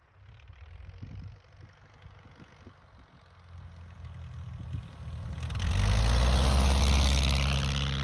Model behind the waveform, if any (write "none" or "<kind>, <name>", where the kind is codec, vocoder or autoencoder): none